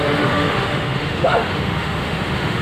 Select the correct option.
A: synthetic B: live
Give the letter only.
A